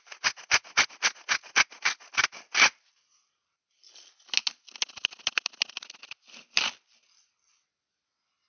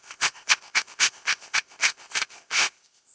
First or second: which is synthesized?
second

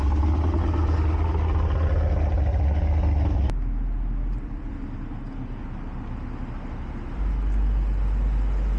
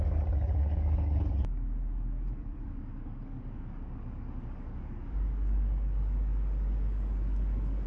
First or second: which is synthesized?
second